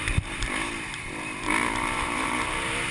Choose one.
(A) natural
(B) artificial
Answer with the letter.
B